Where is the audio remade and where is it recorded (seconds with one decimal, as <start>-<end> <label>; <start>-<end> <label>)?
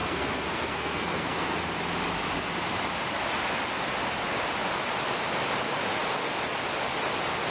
0.0-1.6 remade; 1.6-7.5 recorded